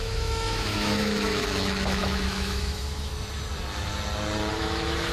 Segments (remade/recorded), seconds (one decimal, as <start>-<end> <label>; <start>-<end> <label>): 0.0-3.1 remade; 3.1-4.5 recorded; 4.5-5.1 remade